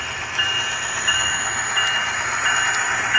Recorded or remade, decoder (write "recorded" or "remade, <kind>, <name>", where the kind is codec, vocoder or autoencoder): recorded